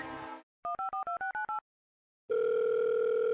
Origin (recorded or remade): recorded